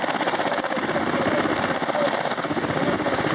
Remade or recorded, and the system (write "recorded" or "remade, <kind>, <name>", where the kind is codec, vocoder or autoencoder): recorded